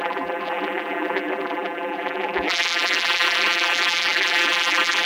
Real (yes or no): no